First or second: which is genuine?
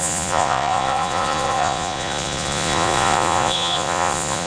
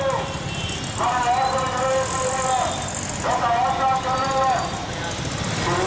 second